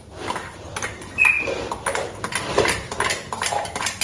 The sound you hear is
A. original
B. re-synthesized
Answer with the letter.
A